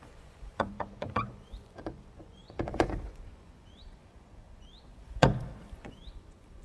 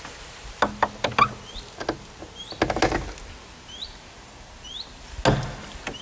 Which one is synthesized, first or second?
first